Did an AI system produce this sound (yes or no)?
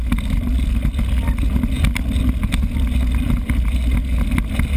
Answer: no